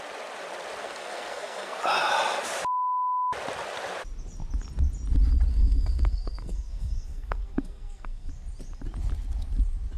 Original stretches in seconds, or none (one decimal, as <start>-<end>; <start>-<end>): 0.0-0.8; 1.8-5.5; 8.3-10.0